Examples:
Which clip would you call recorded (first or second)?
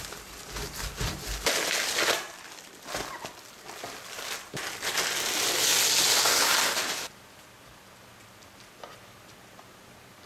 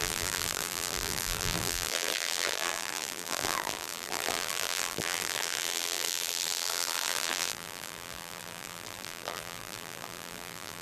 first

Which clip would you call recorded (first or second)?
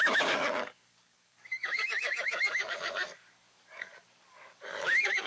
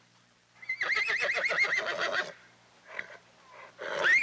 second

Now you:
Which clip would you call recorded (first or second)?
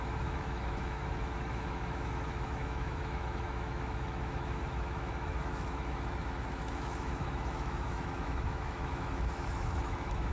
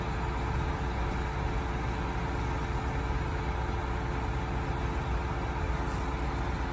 second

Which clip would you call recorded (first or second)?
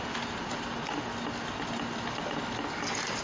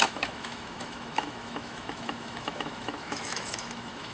first